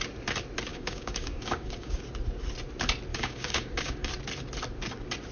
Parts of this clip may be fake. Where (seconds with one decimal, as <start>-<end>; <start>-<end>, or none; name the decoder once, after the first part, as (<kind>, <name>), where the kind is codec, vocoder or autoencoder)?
0.7-2.0 (codec, DAC); 3.1-4.1